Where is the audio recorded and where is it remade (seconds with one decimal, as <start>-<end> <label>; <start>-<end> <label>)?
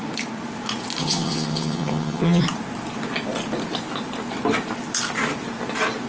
0.0-1.0 recorded; 1.0-2.4 remade; 2.4-6.1 recorded